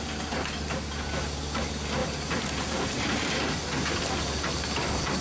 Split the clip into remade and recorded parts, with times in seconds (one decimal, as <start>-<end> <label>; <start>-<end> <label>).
0.0-5.2 recorded